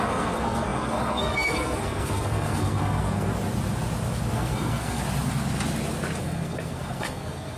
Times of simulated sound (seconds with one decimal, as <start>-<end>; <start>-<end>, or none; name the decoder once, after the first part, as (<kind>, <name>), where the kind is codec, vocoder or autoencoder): 0.0-3.3 (codec, SNAC); 4.3-5.0; 6.2-7.6